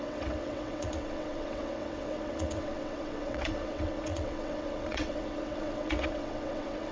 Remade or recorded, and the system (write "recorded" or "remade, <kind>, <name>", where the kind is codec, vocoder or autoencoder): remade, vocoder, WaveNeXt